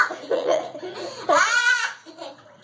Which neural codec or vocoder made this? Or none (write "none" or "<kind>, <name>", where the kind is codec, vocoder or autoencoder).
vocoder, Vocos